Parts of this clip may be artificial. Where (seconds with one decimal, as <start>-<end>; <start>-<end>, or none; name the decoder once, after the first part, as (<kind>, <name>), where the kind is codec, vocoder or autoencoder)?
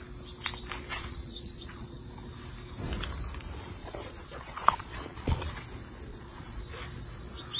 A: 0.9-2.0 (vocoder, Vocos); 3.8-5.5; 6.1-6.6